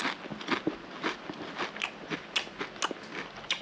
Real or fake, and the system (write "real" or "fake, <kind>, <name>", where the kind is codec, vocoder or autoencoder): real